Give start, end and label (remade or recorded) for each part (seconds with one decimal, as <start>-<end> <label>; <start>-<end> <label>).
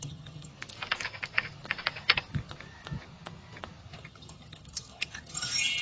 0.0-0.5 remade; 0.5-4.0 recorded; 4.0-5.8 remade